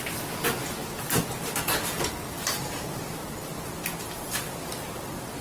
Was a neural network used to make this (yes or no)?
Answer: no